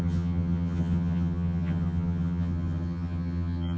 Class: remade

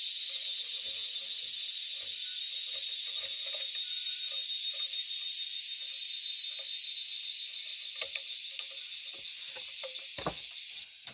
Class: recorded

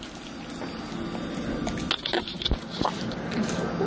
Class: recorded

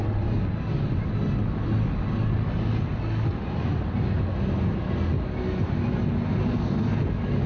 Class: recorded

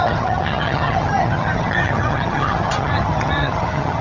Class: remade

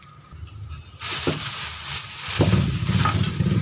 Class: recorded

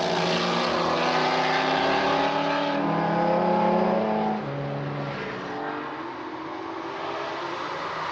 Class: recorded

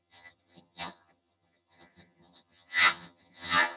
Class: remade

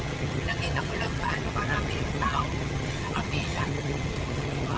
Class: remade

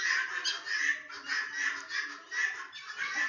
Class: recorded